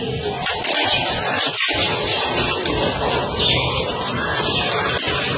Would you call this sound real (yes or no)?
yes